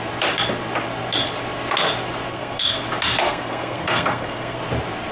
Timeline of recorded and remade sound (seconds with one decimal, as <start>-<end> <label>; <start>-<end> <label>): 0.0-2.3 recorded; 2.3-2.8 remade; 2.8-3.2 recorded; 3.2-4.6 remade; 4.6-5.1 recorded